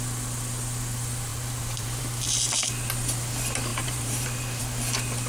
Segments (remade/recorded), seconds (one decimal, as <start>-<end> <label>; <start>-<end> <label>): 0.0-1.3 recorded; 1.3-2.0 remade; 2.0-3.7 recorded; 3.7-4.6 remade; 4.6-5.3 recorded